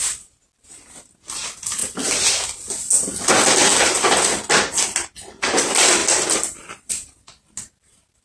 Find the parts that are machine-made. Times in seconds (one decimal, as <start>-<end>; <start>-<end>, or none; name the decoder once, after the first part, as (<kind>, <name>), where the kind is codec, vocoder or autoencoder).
none